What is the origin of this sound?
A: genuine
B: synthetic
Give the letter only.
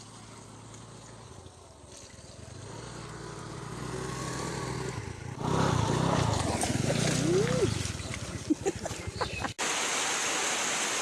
A